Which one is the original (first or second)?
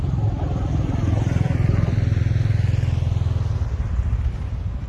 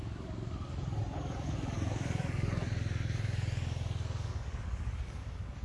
first